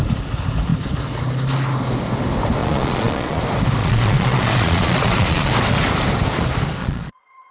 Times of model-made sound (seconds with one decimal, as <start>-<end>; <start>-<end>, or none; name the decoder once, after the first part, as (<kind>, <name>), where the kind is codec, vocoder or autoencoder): 2.6-3.4 (vocoder, Vocos); 3.8-5.5; 6.8-7.5